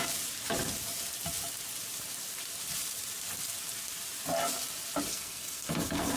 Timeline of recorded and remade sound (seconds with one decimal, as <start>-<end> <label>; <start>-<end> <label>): 0.0-5.1 recorded; 5.1-6.2 remade